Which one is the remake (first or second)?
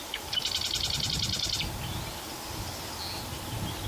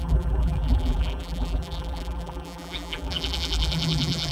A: second